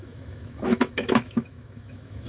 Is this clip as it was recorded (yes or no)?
no